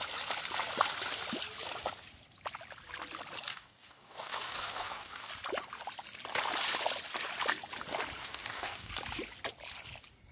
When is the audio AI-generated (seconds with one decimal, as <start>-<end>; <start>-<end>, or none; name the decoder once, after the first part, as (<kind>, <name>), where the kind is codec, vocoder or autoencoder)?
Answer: 3.5-5.3 (codec, DAC); 8.2-8.9